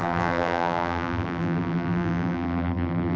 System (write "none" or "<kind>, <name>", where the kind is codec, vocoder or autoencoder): vocoder, BigVGAN v2